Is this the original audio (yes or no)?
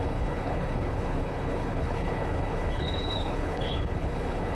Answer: no